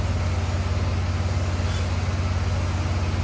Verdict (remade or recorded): recorded